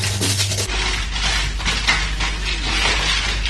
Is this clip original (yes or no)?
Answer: yes